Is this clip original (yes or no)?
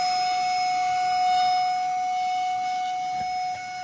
yes